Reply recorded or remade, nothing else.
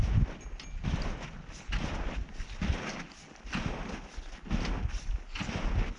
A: recorded